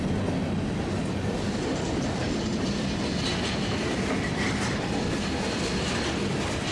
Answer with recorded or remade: recorded